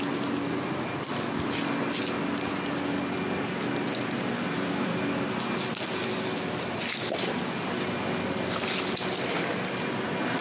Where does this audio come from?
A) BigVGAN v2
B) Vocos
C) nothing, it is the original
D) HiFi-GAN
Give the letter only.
C